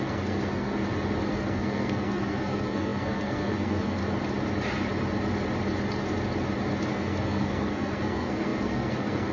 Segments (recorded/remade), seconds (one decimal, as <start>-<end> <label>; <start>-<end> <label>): 0.0-0.8 remade; 0.8-1.3 recorded; 1.3-4.0 remade; 4.0-6.9 recorded; 6.9-9.3 remade